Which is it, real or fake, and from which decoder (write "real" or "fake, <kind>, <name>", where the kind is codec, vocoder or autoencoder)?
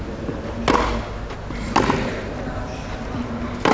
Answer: real